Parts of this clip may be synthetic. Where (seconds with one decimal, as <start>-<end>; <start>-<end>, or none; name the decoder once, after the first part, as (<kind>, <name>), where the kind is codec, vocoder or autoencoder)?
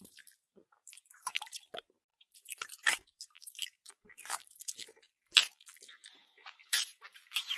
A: 0.0-5.1 (vocoder, BigVGAN v2); 6.1-7.6